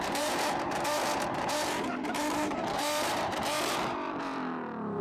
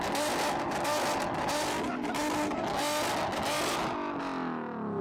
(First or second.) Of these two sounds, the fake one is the first